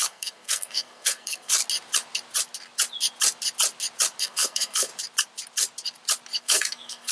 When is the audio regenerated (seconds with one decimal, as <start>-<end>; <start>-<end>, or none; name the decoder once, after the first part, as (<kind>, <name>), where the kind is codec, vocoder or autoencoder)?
0.0-1.5 (codec, SNAC); 4.2-4.9; 6.4-7.1